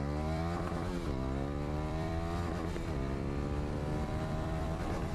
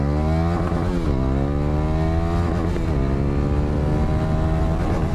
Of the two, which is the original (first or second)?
second